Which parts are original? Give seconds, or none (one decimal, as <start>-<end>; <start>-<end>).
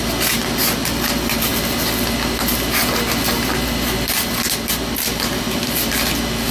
0.0-6.5